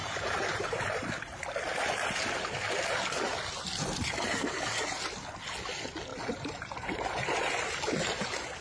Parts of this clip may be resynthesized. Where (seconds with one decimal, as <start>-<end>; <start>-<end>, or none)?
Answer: 0.0-1.4; 6.1-7.5